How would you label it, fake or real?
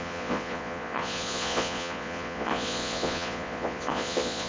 fake